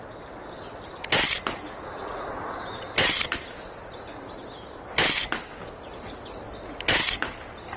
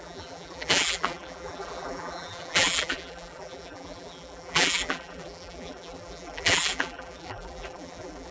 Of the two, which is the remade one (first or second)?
second